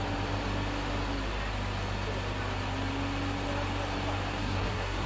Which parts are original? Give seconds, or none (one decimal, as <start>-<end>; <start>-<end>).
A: 0.0-4.4